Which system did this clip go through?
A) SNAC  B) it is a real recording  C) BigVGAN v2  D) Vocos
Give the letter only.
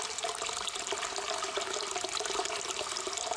B